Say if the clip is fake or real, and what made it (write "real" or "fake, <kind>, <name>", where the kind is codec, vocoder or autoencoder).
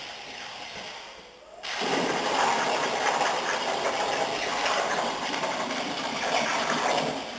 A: fake, vocoder, BigVGAN v2